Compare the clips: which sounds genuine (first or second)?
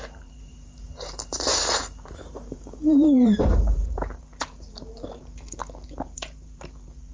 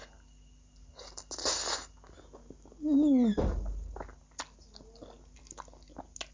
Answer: second